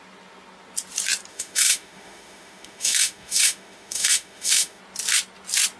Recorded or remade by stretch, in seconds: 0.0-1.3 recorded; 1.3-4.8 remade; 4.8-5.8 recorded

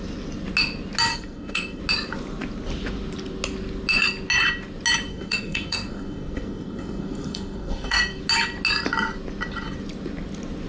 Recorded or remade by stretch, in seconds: 0.0-1.1 recorded; 1.1-1.8 remade; 1.8-5.1 recorded; 5.1-8.2 remade; 8.2-10.7 recorded

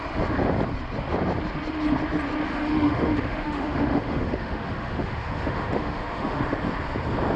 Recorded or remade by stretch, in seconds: 0.0-2.5 recorded; 2.5-6.4 remade; 6.4-7.4 recorded

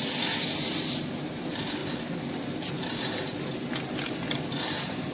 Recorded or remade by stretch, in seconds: 0.0-5.1 recorded

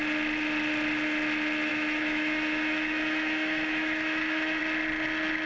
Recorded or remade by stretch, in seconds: 0.0-1.7 recorded; 1.7-4.6 remade; 4.6-5.5 recorded

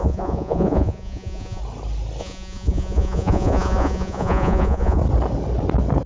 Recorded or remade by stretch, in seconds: 0.0-1.6 remade; 1.6-2.2 recorded; 2.2-5.0 remade; 5.0-6.1 recorded

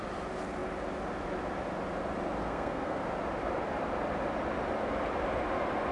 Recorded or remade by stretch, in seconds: 0.0-2.4 recorded; 2.4-3.0 remade; 3.0-5.9 recorded

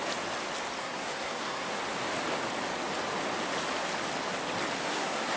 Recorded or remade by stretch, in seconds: 0.0-0.8 recorded; 0.8-1.8 remade; 1.8-4.8 recorded; 4.8-5.4 remade